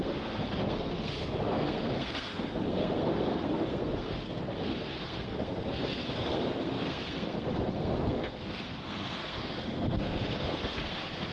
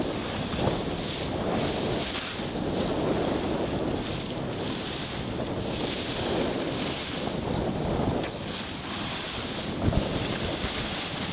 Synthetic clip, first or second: first